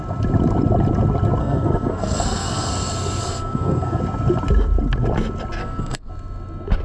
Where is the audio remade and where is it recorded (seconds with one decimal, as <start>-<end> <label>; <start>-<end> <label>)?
0.0-1.4 recorded; 1.4-2.7 remade; 2.7-3.2 recorded; 3.2-4.0 remade; 4.0-5.6 recorded; 5.6-6.1 remade; 6.1-6.8 recorded